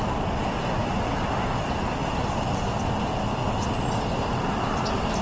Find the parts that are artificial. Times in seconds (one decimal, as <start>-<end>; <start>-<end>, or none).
none